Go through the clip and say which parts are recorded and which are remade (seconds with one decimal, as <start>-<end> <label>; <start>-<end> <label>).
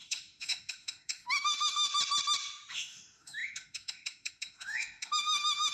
0.0-1.9 remade; 1.9-2.7 recorded; 2.7-5.7 remade